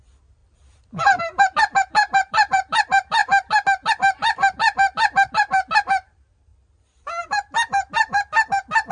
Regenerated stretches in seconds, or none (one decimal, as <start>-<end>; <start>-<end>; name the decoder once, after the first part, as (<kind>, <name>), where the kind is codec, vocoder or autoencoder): 0.0-3.2 (vocoder, BigVGAN v2); 3.9-6.5; 7.2-8.9